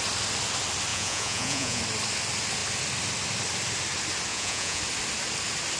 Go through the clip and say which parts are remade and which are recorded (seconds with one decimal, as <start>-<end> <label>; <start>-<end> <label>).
0.0-0.9 recorded; 0.9-1.8 remade; 1.8-4.3 recorded; 4.3-4.8 remade; 4.8-5.8 recorded